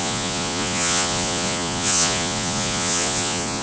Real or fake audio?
fake